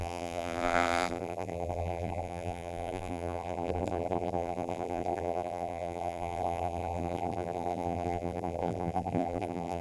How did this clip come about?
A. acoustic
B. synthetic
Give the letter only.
B